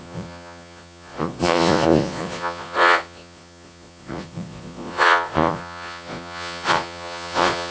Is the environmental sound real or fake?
fake